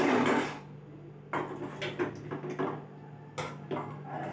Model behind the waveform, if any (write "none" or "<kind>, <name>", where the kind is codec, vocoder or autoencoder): none